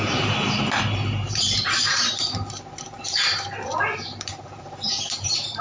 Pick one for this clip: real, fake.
fake